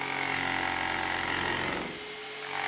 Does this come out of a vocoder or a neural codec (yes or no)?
no